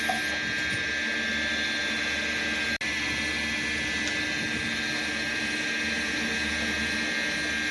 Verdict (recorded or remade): recorded